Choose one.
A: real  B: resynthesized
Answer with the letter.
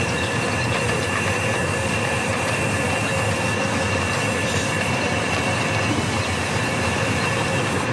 A